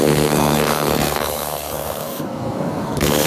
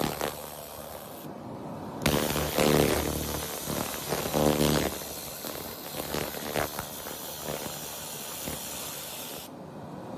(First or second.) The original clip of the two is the second